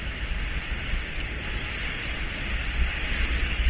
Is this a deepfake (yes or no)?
no